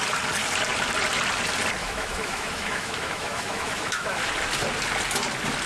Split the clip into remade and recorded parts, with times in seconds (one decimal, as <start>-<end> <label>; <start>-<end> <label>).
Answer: 0.0-1.8 recorded; 1.8-4.3 remade; 4.3-5.7 recorded